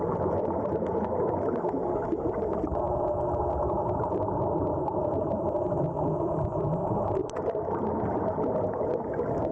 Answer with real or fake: real